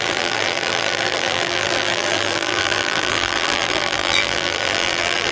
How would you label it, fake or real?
fake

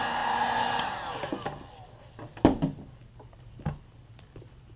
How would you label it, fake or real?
real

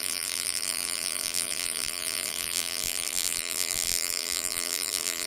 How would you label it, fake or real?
fake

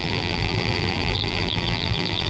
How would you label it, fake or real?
fake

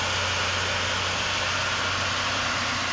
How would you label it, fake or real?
real